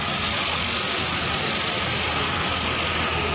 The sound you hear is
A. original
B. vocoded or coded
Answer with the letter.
A